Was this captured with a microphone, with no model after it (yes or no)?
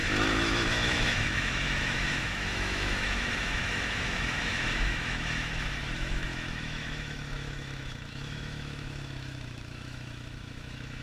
no